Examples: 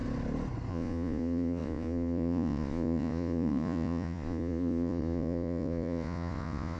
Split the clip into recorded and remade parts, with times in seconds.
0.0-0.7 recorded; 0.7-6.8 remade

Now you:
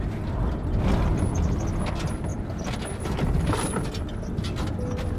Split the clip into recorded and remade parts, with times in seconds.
0.0-2.3 recorded; 2.3-4.5 remade; 4.5-5.2 recorded

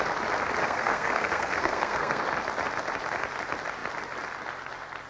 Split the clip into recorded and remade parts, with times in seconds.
0.0-0.6 recorded; 0.6-2.2 remade; 2.2-5.1 recorded

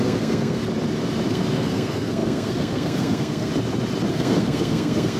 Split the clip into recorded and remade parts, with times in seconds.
0.0-0.6 remade; 0.6-1.3 recorded; 1.3-3.5 remade; 3.5-4.1 recorded; 4.1-5.2 remade

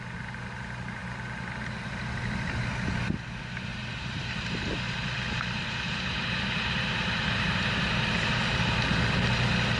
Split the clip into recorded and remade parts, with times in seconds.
0.0-3.7 recorded; 3.7-8.7 remade; 8.7-9.8 recorded

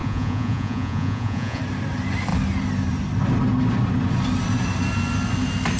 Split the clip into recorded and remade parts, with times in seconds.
0.0-1.6 remade; 1.6-5.8 recorded

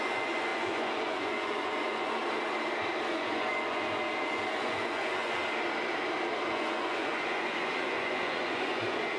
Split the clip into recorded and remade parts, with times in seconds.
0.0-2.2 remade; 2.2-3.1 recorded; 3.1-5.4 remade; 5.4-6.5 recorded; 6.5-9.2 remade